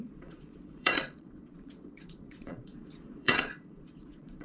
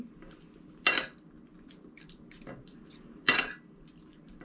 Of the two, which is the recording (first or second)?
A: second